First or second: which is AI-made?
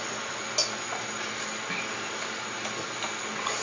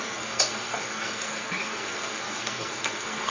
second